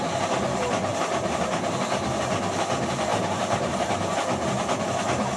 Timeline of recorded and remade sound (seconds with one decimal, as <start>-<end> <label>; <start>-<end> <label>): 0.0-3.1 recorded; 3.1-3.9 remade; 3.9-5.4 recorded